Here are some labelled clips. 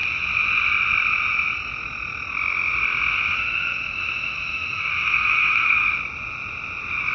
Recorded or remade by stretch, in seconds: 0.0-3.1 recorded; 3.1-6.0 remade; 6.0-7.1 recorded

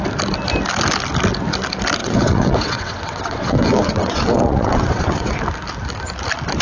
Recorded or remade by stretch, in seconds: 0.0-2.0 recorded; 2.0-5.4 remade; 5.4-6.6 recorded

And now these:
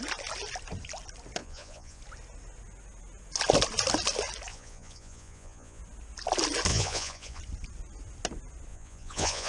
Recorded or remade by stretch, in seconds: 0.0-1.4 recorded; 1.4-2.0 remade; 2.0-4.5 recorded; 4.5-5.8 remade; 5.8-6.7 recorded; 6.7-7.4 remade; 7.4-8.7 recorded; 8.7-9.5 remade

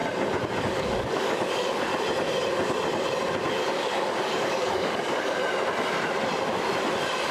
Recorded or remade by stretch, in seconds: 0.0-0.6 recorded; 0.6-1.9 remade; 1.9-3.5 recorded; 3.5-5.4 remade; 5.4-7.3 recorded

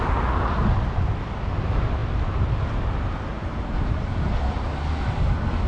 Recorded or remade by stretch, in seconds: 0.0-3.3 recorded; 3.3-4.3 remade; 4.3-5.7 recorded